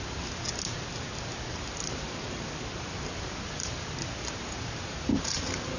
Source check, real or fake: real